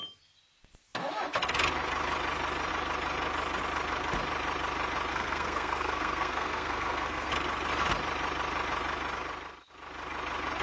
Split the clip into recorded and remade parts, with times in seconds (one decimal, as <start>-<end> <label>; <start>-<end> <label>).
0.0-5.1 recorded; 5.1-7.3 remade; 7.3-10.6 recorded